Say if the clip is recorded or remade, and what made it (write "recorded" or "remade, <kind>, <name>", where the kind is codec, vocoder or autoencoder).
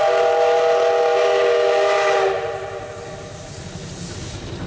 recorded